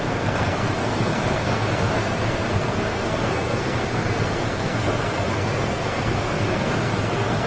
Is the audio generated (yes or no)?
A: yes